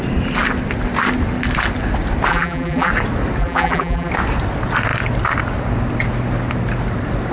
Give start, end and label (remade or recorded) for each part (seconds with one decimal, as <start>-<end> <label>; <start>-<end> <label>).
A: 0.0-2.3 recorded; 2.3-2.9 remade; 2.9-3.4 recorded; 3.4-4.1 remade; 4.1-7.3 recorded

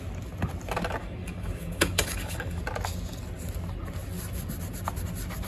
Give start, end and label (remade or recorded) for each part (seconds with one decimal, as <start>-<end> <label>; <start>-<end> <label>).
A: 0.0-1.0 recorded; 1.0-2.6 remade; 2.6-5.5 recorded

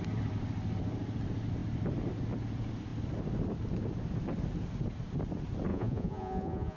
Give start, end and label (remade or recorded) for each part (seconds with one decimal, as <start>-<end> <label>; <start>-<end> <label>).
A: 0.0-5.7 recorded; 5.7-6.8 remade

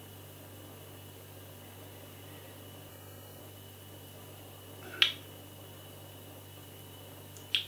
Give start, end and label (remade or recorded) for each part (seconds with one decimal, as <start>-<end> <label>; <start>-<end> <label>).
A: 0.0-2.9 recorded; 2.9-3.4 remade; 3.4-7.7 recorded